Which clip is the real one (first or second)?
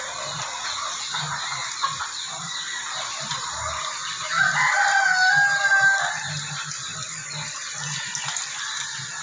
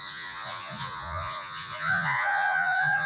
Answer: first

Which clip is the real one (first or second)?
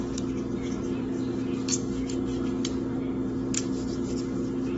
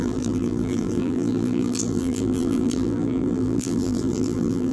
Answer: first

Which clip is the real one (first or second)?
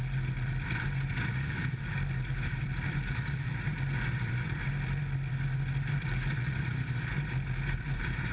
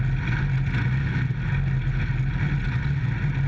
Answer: second